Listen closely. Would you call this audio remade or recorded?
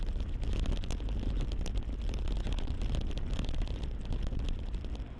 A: recorded